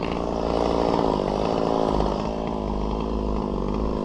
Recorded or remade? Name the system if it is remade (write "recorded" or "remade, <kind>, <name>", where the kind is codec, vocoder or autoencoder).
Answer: recorded